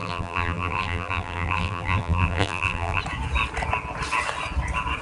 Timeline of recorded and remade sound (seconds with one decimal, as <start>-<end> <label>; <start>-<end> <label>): 0.0-3.0 remade; 3.0-5.0 recorded